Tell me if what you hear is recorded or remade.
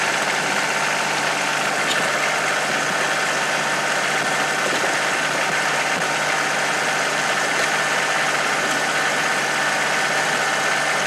recorded